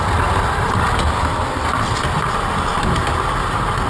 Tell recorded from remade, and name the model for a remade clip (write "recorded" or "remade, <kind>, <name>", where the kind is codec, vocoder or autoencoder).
recorded